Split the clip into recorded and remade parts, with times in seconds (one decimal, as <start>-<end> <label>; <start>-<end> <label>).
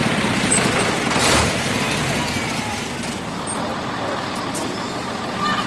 0.0-1.2 remade; 1.2-2.4 recorded; 2.4-3.3 remade; 3.3-3.7 recorded; 3.7-5.2 remade; 5.2-5.7 recorded